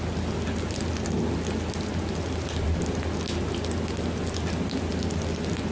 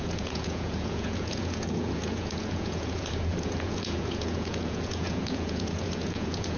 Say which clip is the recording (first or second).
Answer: first